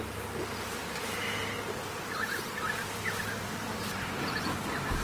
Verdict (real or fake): real